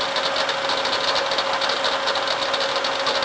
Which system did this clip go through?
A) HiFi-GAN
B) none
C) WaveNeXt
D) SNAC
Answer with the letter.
B